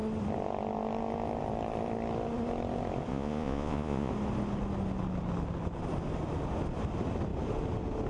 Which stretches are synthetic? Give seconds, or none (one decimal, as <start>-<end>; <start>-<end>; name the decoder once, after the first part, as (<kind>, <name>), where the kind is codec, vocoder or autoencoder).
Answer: 3.1-4.1 (vocoder, Vocos)

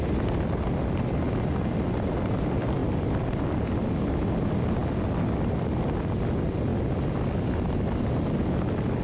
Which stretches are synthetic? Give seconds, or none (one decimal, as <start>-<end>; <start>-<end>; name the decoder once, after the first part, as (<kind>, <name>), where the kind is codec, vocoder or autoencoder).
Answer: none

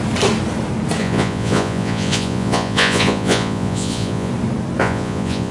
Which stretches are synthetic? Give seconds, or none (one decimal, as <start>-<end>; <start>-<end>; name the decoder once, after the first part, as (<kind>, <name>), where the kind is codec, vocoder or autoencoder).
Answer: 1.0-4.3 (vocoder, Vocos); 4.8-5.5

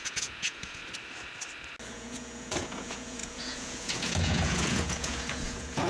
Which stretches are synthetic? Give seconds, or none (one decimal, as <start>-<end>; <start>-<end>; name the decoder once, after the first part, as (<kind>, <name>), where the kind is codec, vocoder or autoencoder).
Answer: 0.0-0.8 (vocoder, Vocos); 1.9-5.9

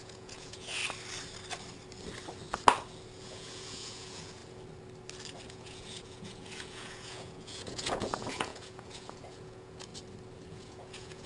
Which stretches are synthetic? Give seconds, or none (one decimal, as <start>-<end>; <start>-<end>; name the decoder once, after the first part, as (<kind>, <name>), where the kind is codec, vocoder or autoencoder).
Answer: 0.0-0.8 (vocoder, Vocos); 3.2-4.4; 5.5-9.9; 10.5-11.3